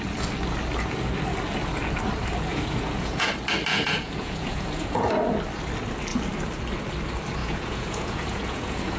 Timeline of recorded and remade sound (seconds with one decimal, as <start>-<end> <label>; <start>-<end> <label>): 0.0-2.5 recorded; 2.5-3.3 remade; 3.3-3.7 recorded; 3.7-5.1 remade; 5.1-7.4 recorded; 7.4-9.0 remade

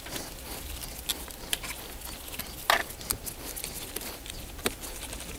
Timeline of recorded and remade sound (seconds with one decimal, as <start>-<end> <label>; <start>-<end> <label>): 0.0-1.1 recorded; 1.1-2.4 remade; 2.4-5.4 recorded

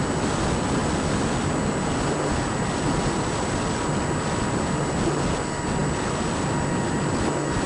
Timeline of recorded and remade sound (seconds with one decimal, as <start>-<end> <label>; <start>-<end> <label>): 0.0-7.7 recorded